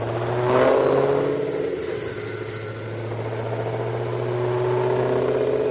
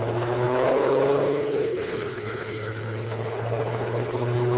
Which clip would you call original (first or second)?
first